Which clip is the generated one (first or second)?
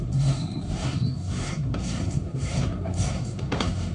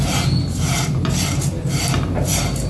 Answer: first